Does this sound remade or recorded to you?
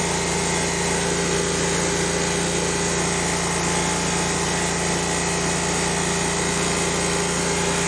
recorded